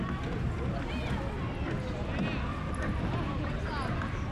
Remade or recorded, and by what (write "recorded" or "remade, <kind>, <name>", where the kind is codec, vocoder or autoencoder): recorded